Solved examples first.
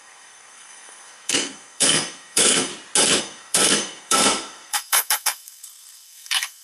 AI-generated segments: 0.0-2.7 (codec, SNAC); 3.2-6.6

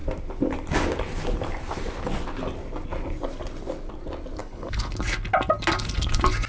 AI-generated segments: 4.4-4.9 (codec, HILCodec)

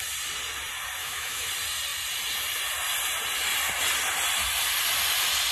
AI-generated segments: 1.0-1.5 (autoencoder, DAC-VAE)

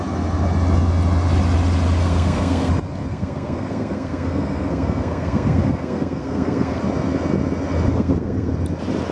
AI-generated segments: 2.0-2.7 (codec, SNAC); 3.1-6.8; 7.9-8.5

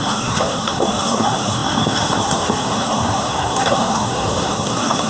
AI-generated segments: 0.0-5.1 (codec, SNAC)

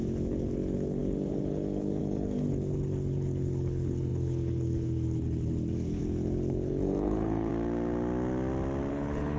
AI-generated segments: 0.0-7.5 (codec, HILCodec); 8.9-9.4